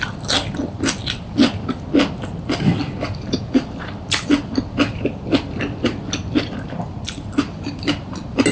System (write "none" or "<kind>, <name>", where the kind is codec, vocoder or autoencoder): none